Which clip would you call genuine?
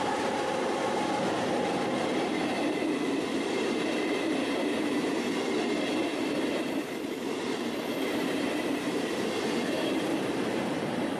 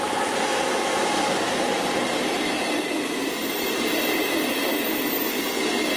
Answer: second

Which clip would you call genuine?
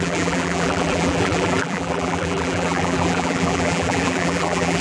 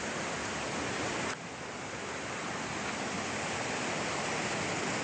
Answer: second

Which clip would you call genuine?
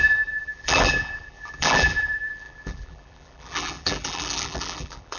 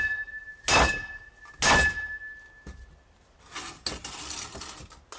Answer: second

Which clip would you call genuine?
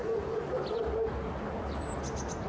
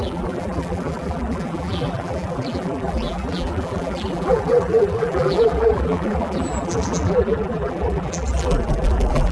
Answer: first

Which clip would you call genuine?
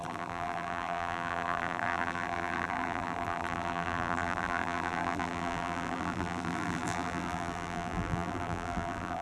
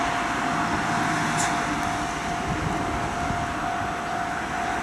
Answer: second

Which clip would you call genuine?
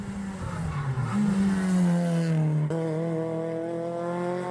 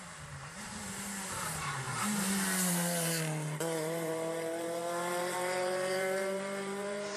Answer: first